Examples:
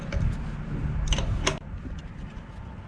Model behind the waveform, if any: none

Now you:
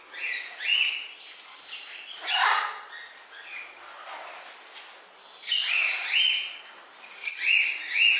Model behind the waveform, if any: none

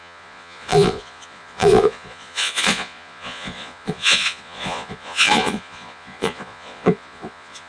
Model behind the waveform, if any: vocoder, Vocos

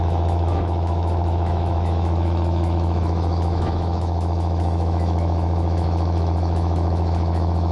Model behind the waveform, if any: autoencoder, DAC-VAE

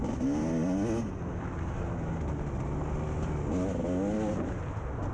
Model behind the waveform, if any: none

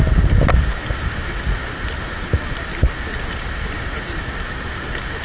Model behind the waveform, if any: none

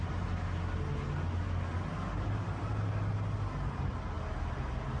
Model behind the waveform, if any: none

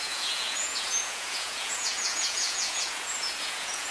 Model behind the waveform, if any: vocoder, Vocos